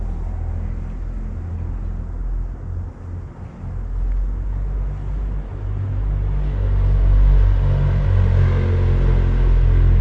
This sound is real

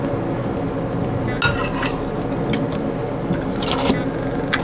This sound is real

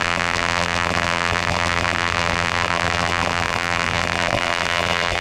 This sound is fake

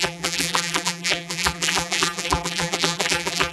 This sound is fake